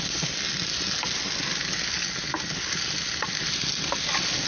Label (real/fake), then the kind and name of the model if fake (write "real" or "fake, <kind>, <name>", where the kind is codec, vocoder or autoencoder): real